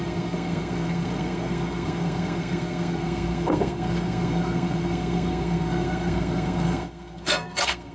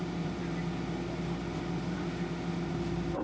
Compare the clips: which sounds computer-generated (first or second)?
first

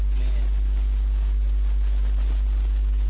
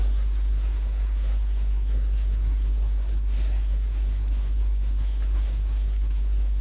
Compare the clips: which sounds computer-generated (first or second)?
second